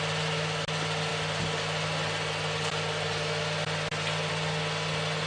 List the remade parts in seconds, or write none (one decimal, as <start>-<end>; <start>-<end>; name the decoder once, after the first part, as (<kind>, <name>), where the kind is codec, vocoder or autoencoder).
none